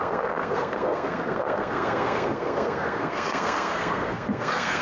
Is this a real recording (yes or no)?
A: no